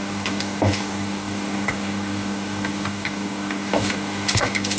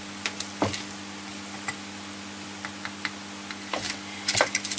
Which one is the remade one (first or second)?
first